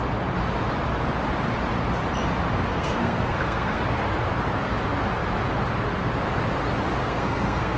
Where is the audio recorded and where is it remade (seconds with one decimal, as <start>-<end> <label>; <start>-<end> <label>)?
0.0-2.7 recorded; 2.7-3.8 remade; 3.8-7.0 recorded; 7.0-7.8 remade